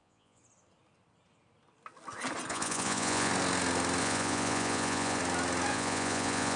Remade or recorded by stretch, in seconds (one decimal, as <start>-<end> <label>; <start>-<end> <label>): 0.0-0.4 remade; 0.4-2.5 recorded; 2.5-3.3 remade; 3.3-4.0 recorded; 4.0-5.2 remade; 5.2-5.7 recorded; 5.7-6.6 remade